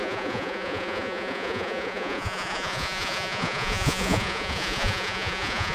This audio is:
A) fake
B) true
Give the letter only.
A